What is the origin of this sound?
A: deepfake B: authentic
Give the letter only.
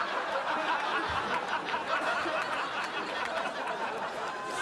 B